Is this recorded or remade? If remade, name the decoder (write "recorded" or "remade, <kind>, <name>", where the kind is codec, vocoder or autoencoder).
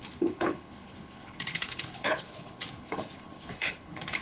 remade, codec, HILCodec